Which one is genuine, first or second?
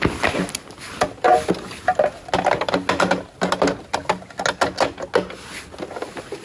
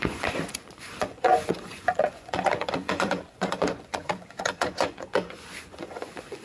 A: first